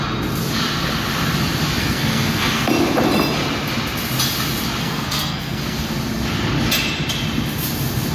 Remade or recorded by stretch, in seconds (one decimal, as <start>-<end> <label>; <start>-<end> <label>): 0.0-1.8 recorded; 1.8-2.7 remade; 2.7-4.8 recorded; 4.8-5.9 remade; 5.9-8.1 recorded